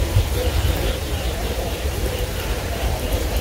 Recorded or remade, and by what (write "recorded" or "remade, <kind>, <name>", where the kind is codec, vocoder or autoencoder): remade, vocoder, BigVGAN v2